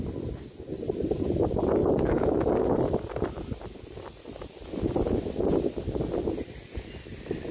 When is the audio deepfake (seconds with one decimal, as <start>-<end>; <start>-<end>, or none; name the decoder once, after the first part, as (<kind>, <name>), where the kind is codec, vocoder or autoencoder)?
none